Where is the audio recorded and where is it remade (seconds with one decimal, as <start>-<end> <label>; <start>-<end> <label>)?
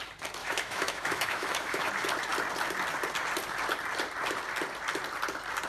0.0-0.4 recorded; 0.4-1.9 remade; 1.9-5.7 recorded